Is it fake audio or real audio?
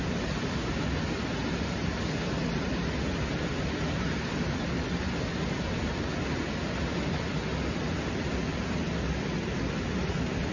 real